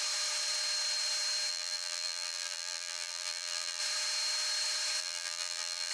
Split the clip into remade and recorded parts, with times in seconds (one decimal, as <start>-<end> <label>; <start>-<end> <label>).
0.0-1.5 recorded; 1.5-3.8 remade; 3.8-5.0 recorded; 5.0-5.9 remade